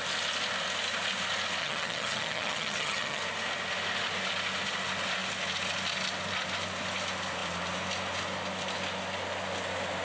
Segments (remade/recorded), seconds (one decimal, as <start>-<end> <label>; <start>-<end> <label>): 0.0-1.6 recorded; 1.6-3.2 remade; 3.2-10.0 recorded